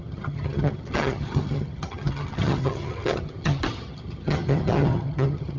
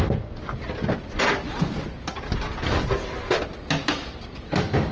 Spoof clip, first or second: first